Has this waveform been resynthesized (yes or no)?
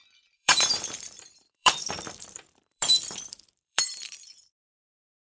yes